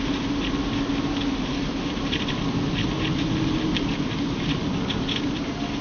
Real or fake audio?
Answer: real